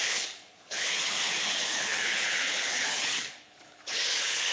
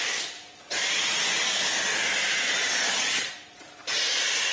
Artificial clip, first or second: first